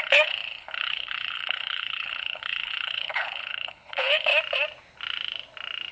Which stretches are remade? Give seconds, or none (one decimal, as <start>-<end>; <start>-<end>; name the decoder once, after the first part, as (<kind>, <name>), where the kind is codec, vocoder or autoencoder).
0.0-4.3 (codec, HILCodec)